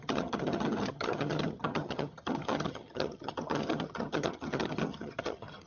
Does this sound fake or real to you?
fake